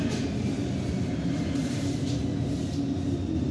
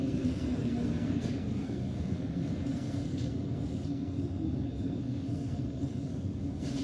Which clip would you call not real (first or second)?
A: second